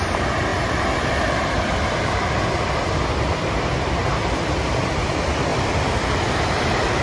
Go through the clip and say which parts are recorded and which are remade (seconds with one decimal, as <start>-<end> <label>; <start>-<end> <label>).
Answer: 0.0-0.5 recorded; 0.5-3.1 remade; 3.1-4.0 recorded; 4.0-5.1 remade; 5.1-5.5 recorded; 5.5-7.0 remade